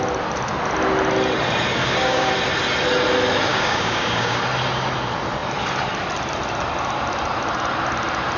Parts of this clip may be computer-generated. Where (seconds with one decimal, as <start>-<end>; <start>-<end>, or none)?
1.8-2.3; 3.5-4.4